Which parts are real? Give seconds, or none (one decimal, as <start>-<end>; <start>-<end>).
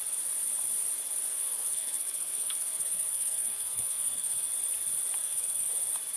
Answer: 0.0-1.3; 4.5-5.2; 5.7-6.2